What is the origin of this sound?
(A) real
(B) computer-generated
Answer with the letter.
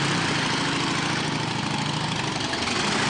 A